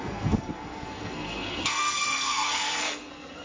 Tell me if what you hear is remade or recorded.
remade